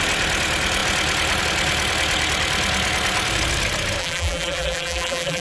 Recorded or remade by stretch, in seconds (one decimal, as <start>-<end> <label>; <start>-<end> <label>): 0.0-4.0 recorded; 4.0-5.4 remade